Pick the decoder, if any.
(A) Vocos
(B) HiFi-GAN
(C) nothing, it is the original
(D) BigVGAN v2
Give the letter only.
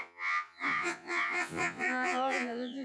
A